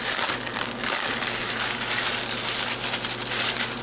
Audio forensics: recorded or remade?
recorded